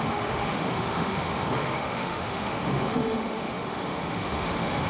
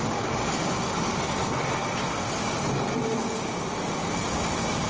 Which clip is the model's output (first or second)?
first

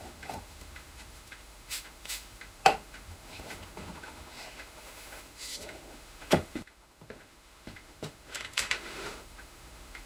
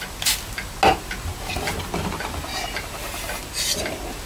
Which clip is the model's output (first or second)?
first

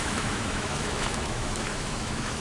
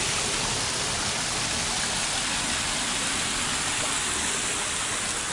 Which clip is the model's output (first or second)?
first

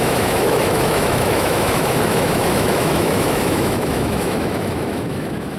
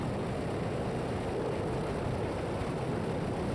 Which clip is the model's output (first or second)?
first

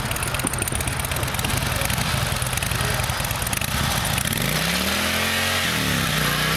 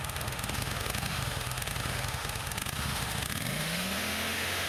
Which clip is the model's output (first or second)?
second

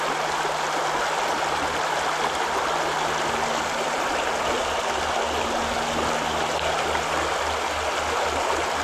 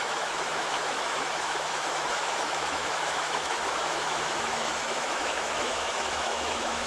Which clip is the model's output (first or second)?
second